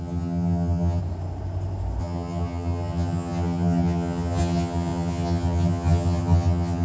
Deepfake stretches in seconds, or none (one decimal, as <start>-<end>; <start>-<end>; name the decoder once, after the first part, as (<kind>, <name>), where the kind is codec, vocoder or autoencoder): 0.0-1.0 (vocoder, HiFi-GAN); 2.0-6.8